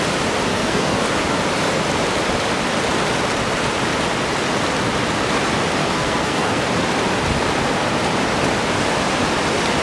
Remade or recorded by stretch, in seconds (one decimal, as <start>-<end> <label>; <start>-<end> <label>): 0.0-0.5 recorded; 0.5-1.0 remade; 1.0-5.8 recorded; 5.8-6.6 remade; 6.6-9.8 recorded